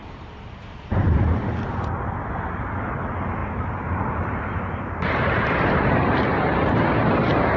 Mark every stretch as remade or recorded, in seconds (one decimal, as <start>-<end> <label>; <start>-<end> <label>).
0.0-1.5 remade; 1.5-3.4 recorded; 3.4-7.6 remade